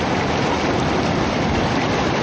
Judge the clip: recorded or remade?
recorded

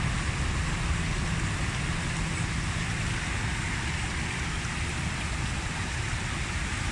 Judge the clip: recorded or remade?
recorded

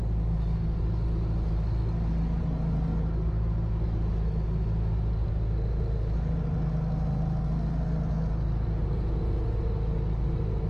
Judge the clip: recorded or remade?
recorded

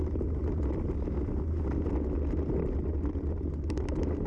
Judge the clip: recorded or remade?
recorded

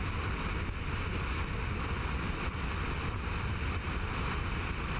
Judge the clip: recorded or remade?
recorded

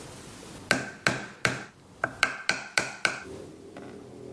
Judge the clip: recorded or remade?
recorded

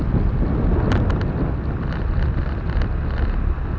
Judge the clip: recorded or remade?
recorded